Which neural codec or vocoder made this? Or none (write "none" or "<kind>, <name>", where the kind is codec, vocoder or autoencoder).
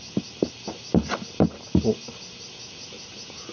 none